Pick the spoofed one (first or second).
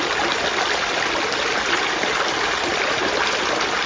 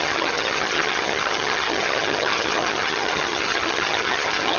second